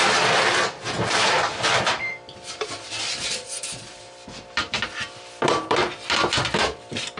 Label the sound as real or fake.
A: fake